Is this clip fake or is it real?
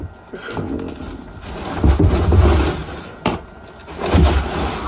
real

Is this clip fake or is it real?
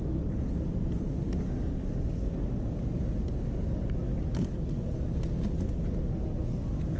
real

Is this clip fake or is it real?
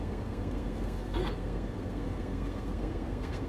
fake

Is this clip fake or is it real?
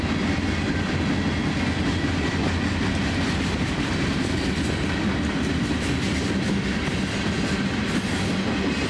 real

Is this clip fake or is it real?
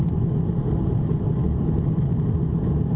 real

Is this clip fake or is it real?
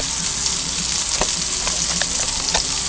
real